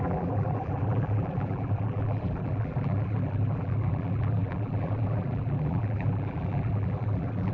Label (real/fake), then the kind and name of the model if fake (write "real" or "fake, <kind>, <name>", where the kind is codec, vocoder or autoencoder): fake, vocoder, BigVGAN v2